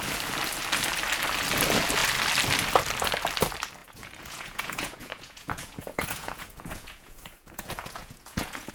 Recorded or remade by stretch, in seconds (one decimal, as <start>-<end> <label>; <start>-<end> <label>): 0.0-3.8 recorded; 3.8-8.7 remade